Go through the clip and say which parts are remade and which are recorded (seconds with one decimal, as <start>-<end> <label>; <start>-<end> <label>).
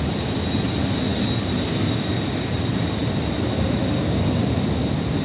0.0-5.2 recorded